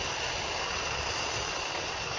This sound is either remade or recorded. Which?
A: recorded